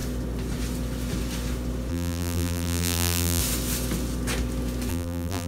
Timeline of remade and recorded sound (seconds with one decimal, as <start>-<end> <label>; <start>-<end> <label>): 0.0-1.9 recorded; 1.9-3.4 remade; 3.4-4.9 recorded; 4.9-5.5 remade